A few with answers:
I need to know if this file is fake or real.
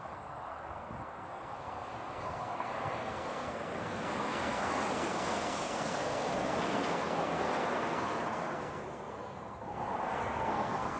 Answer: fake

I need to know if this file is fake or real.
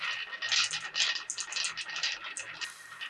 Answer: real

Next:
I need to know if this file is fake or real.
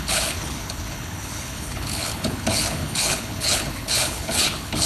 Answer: fake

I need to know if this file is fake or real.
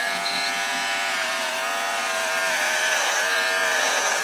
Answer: fake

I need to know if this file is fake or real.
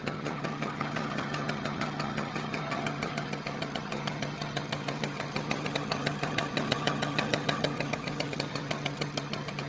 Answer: fake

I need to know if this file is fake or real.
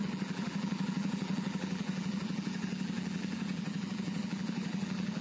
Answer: fake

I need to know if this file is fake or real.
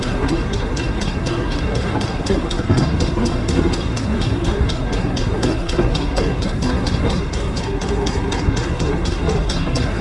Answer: fake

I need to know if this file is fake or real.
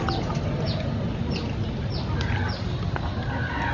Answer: real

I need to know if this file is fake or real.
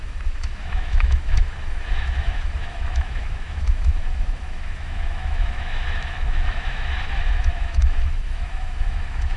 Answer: fake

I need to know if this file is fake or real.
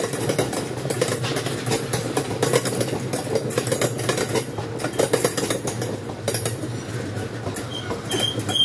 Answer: real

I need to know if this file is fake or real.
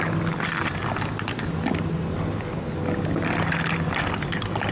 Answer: real